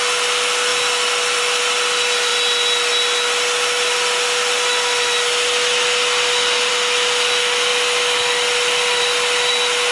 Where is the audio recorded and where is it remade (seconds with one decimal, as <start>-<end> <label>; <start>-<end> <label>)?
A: 0.0-9.9 recorded

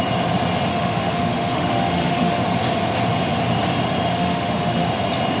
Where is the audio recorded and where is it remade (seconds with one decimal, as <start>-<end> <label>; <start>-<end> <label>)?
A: 0.0-0.7 recorded; 0.7-2.4 remade; 2.4-4.1 recorded; 4.1-4.9 remade; 4.9-5.4 recorded

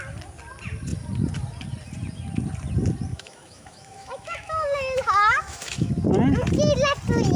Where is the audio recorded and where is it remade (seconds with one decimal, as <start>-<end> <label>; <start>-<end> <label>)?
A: 0.0-3.1 recorded; 3.1-5.9 remade; 5.9-7.4 recorded

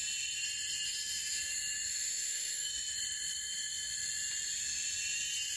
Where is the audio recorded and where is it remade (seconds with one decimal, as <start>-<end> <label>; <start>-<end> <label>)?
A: 0.0-1.9 recorded; 1.9-2.7 remade; 2.7-5.6 recorded

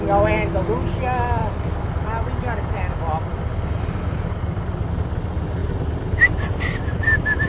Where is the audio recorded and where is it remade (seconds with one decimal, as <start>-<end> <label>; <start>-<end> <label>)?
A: 0.0-7.5 recorded

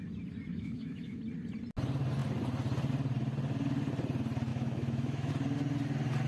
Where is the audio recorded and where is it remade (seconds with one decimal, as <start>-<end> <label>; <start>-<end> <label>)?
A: 0.0-0.5 recorded; 0.5-1.2 remade; 1.2-4.5 recorded; 4.5-5.3 remade; 5.3-6.3 recorded

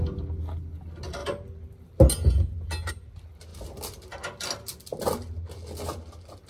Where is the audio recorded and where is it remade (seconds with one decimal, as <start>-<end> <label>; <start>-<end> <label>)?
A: 0.0-6.5 recorded